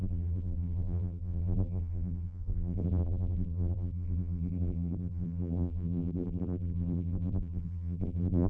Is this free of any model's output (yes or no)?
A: no